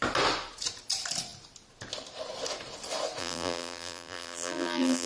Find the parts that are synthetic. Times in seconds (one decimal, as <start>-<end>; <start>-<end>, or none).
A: 3.2-5.1